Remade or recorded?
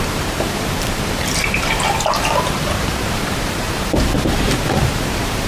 remade